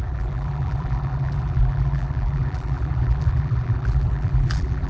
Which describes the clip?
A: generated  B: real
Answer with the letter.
A